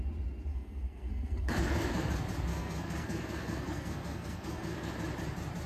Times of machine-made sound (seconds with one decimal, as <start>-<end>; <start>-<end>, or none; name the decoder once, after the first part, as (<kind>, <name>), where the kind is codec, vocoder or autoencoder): 0.5-2.1 (codec, SNAC); 2.5-4.9